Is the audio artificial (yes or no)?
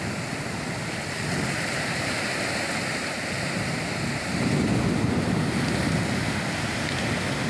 no